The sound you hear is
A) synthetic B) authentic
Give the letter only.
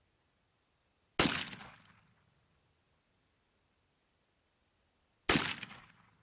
B